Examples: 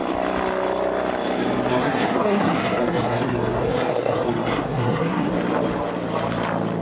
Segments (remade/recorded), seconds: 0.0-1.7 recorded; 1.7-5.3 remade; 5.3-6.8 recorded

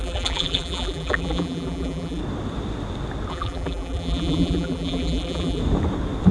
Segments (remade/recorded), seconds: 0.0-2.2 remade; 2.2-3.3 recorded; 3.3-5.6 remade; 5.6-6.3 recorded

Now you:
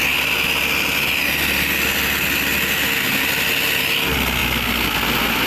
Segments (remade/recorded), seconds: 0.0-5.5 recorded

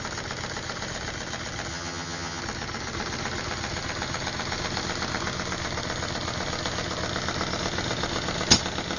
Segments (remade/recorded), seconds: 0.0-1.7 recorded; 1.7-2.4 remade; 2.4-9.0 recorded